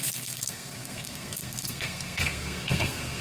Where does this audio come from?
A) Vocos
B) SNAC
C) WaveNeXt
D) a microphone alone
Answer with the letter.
B